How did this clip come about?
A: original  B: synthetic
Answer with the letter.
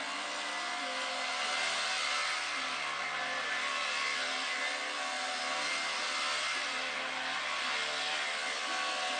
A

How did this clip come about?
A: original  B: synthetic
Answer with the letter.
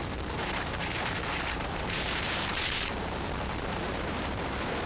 B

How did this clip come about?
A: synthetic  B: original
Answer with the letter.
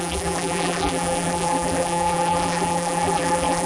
A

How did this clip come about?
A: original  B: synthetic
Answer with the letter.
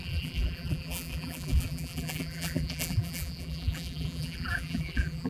B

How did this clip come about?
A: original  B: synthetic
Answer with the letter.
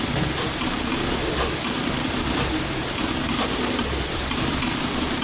B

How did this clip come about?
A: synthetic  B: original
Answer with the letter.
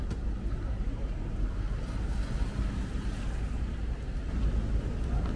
A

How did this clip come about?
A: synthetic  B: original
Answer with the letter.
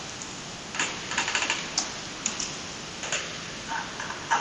B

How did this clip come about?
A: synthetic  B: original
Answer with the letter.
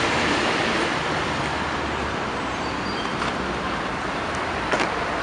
A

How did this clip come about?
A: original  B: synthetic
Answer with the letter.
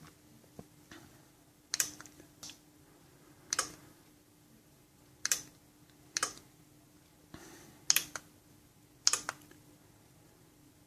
A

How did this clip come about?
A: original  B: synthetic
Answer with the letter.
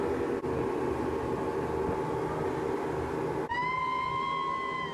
A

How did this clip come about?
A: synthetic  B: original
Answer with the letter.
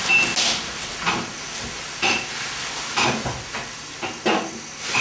B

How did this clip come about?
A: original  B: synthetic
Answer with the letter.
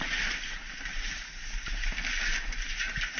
A